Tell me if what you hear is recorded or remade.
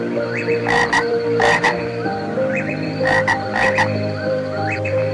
remade